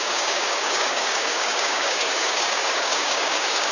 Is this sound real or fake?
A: fake